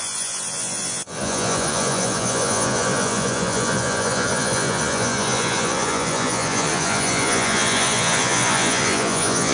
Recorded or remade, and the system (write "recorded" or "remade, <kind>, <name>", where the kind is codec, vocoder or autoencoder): remade, vocoder, Vocos